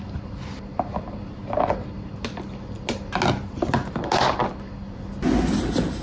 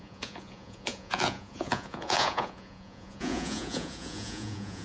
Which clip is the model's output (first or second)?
second